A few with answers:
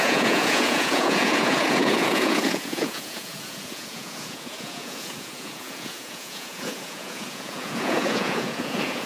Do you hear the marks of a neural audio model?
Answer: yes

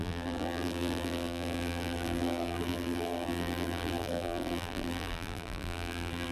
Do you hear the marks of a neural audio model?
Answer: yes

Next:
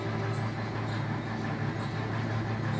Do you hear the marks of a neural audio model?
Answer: no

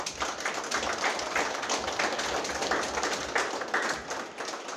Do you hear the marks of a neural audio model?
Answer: no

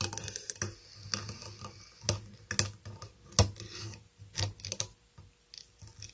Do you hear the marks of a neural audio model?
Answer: no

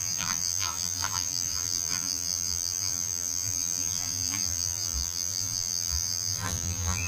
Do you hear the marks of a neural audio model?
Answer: yes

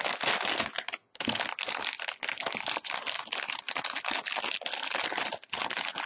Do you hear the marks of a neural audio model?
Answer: no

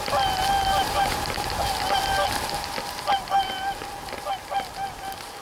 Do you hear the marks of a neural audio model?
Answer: no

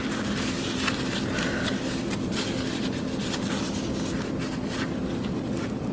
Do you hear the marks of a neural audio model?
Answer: no